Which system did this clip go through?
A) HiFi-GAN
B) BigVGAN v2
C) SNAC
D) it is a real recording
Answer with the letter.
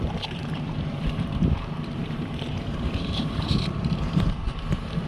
B